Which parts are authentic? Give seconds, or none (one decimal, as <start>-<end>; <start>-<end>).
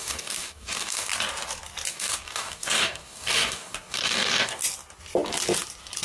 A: 1.1-1.9; 4.6-6.0